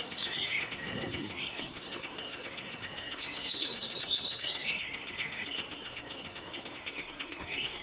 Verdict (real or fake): fake